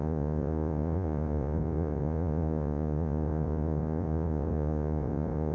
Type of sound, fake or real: fake